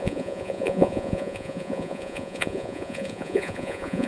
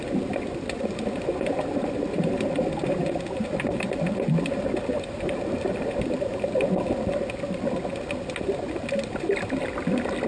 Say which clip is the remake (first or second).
first